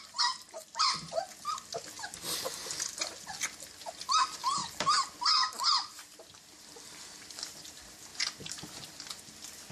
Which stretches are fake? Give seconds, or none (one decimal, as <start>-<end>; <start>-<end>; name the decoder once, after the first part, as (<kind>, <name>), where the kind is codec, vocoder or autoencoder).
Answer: none